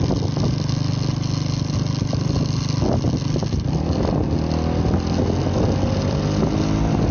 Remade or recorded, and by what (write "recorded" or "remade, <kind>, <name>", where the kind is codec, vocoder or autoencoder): recorded